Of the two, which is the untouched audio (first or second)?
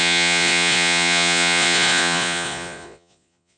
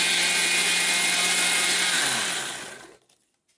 second